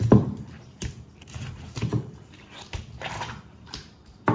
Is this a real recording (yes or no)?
no